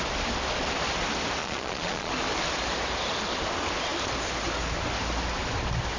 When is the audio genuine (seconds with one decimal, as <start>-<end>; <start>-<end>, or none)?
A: 0.0-1.4; 2.1-6.0